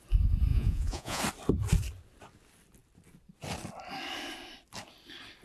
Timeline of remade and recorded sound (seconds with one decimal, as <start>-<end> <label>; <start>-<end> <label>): 0.0-0.5 recorded; 0.5-1.2 remade; 1.2-5.4 recorded